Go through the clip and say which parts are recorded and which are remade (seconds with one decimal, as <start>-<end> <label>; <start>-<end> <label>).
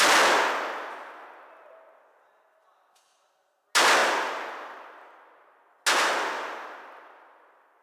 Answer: 0.0-7.8 recorded